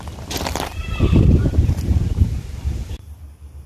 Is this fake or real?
real